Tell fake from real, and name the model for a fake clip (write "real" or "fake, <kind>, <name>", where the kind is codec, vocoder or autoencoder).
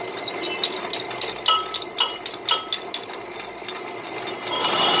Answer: real